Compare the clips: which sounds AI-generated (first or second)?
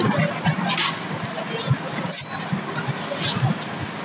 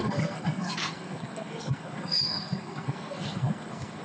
second